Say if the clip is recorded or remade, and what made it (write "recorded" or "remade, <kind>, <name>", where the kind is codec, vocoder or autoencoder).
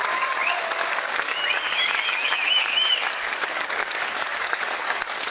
remade, codec, DAC